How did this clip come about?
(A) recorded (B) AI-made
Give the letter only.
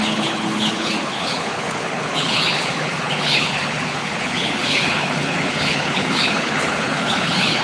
B